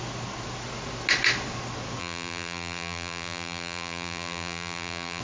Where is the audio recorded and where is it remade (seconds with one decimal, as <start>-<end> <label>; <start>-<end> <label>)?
0.0-2.0 recorded; 2.0-5.2 remade